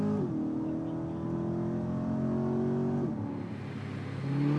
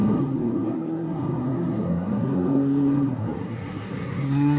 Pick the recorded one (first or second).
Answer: first